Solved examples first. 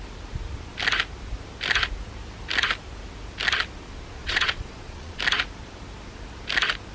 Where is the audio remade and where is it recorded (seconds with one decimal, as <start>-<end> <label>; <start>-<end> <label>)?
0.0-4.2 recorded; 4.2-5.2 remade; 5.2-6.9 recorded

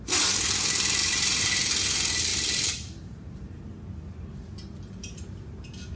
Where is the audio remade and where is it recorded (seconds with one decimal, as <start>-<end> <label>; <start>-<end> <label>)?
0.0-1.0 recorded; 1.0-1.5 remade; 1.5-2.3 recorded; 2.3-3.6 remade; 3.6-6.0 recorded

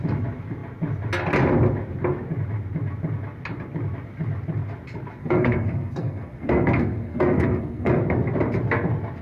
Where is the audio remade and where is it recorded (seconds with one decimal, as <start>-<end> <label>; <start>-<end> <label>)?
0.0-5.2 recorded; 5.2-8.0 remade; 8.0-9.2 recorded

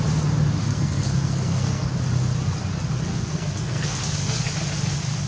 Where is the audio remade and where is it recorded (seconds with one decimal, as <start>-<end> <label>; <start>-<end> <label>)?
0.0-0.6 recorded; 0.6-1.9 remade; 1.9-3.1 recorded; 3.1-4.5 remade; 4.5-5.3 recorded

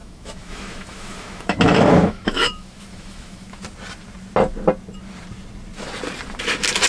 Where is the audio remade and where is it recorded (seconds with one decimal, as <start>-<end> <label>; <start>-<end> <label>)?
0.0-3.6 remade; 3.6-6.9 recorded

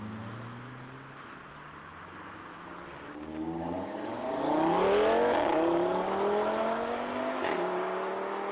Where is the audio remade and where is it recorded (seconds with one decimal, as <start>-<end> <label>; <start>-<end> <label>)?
0.0-2.9 recorded; 2.9-4.4 remade; 4.4-6.6 recorded; 6.6-8.1 remade; 8.1-8.5 recorded